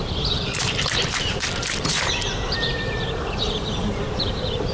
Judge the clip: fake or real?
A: fake